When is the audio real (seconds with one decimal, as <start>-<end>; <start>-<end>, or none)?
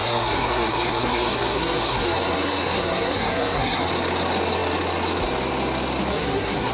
3.9-6.1